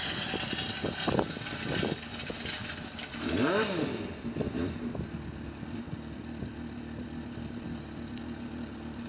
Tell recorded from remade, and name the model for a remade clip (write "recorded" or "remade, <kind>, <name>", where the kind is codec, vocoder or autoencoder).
recorded